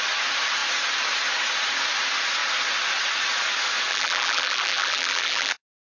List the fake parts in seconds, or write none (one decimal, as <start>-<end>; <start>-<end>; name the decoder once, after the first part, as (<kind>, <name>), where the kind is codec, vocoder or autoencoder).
3.9-5.6 (vocoder, BigVGAN v2)